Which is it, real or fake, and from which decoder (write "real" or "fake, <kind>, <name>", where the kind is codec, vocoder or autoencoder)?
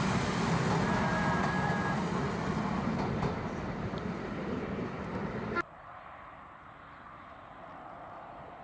real